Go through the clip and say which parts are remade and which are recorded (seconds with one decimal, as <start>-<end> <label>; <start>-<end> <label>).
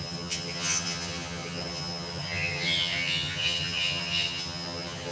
0.0-5.1 remade